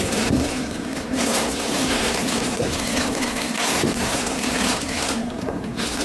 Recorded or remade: remade